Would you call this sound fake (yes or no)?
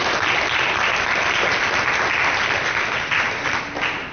no